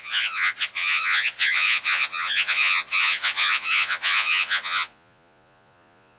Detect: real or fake fake